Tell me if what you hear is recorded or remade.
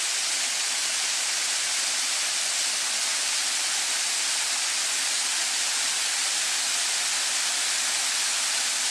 recorded